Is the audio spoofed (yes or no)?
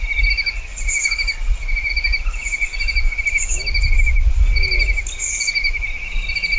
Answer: no